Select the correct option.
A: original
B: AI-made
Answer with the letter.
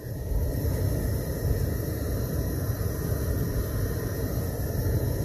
A